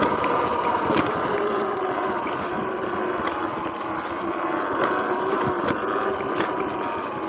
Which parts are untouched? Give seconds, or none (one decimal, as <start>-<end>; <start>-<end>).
0.0-0.5; 4.2-7.3